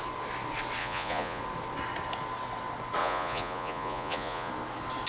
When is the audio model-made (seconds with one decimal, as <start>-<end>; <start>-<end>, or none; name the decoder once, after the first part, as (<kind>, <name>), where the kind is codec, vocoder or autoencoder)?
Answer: 0.8-1.4 (vocoder, Vocos); 3.0-4.5